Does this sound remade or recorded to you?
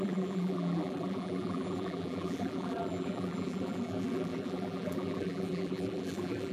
remade